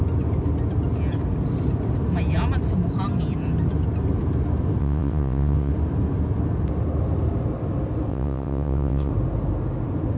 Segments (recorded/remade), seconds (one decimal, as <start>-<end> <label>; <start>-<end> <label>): 0.0-4.8 recorded; 4.8-5.7 remade; 5.7-8.1 recorded; 8.1-9.1 remade; 9.1-10.2 recorded